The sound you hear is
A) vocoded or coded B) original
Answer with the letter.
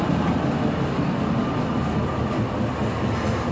B